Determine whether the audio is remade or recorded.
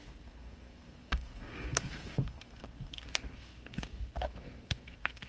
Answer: remade